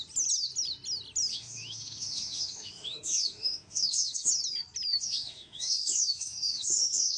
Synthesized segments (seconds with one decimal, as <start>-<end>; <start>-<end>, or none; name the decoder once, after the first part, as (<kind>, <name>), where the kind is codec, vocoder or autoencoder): 1.3-4.3 (autoencoder, DAC-VAE); 4.9-7.2